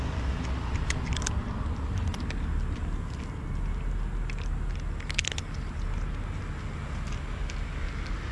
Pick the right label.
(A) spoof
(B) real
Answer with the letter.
B